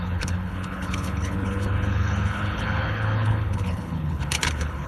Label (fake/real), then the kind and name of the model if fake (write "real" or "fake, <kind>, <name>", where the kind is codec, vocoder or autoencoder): fake, codec, HILCodec